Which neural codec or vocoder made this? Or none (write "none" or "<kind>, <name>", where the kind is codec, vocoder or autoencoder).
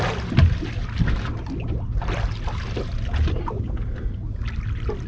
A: none